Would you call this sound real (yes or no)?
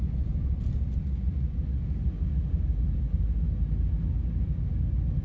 yes